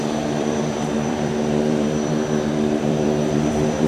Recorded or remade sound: remade